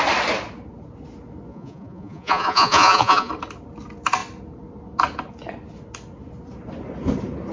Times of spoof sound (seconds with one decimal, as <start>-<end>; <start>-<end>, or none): 1.5-3.3

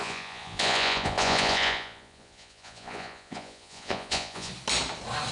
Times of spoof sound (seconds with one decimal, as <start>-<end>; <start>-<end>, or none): 0.0-4.5

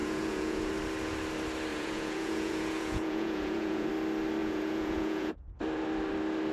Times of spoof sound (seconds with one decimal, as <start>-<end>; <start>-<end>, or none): 0.0-0.7; 1.7-3.9; 4.4-5.6

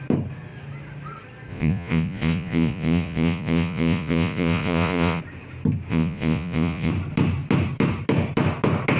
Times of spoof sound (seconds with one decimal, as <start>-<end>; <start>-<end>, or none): 1.5-5.2; 5.9-6.9

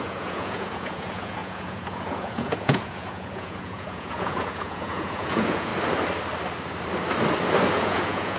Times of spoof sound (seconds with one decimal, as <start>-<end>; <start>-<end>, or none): 0.0-5.7; 7.7-8.4

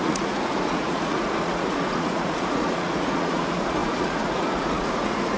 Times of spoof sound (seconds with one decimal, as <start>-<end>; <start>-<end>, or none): 0.0-5.4

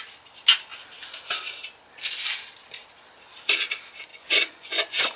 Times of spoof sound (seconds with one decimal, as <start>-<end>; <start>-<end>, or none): 4.1-5.2

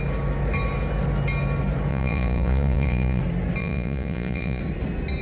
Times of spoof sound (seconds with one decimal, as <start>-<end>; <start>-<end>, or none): 1.9-3.2; 3.6-4.6